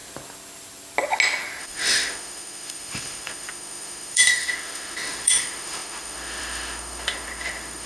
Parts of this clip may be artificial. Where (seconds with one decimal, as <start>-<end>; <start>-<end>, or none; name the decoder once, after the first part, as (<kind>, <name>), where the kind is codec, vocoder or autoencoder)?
1.6-7.9 (autoencoder, DAC-VAE)